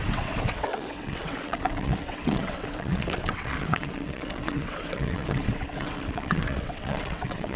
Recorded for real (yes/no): no